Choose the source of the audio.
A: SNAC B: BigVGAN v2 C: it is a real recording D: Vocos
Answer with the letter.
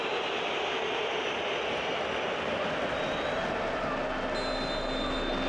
C